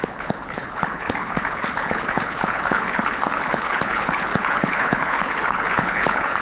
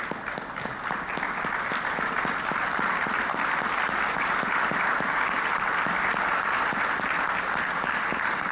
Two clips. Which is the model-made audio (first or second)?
first